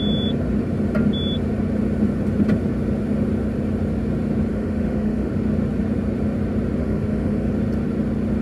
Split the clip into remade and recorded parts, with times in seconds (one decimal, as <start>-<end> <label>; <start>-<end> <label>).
0.0-4.5 recorded; 4.5-5.3 remade; 5.3-6.8 recorded; 6.8-7.5 remade; 7.5-8.4 recorded